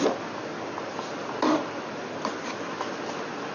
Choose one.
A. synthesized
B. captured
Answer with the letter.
B